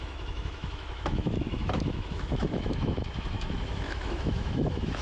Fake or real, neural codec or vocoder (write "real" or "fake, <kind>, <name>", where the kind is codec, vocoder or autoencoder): fake, autoencoder, DAC-VAE